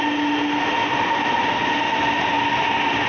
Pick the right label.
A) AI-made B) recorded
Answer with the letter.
B